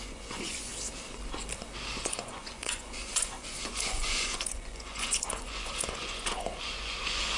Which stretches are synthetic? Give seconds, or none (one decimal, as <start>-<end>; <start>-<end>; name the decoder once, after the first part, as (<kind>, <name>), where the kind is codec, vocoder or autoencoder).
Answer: 0.0-0.7 (vocoder, Vocos); 2.0-7.4